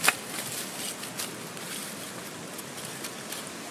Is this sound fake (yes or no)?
no